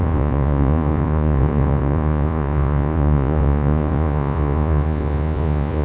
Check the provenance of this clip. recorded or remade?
remade